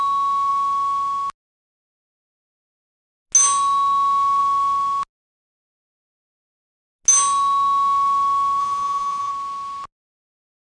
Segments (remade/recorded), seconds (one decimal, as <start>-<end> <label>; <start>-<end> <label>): 0.0-8.6 recorded; 8.6-9.3 remade; 9.3-10.7 recorded